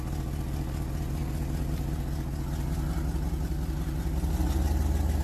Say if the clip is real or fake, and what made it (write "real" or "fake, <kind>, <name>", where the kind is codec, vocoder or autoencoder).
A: real